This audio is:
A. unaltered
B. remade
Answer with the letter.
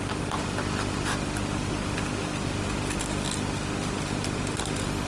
A